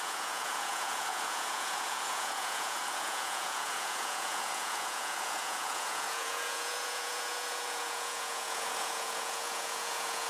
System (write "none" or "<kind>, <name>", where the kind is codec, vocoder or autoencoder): vocoder, Vocos